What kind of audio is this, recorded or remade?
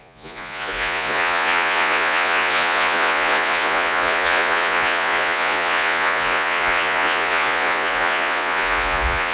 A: remade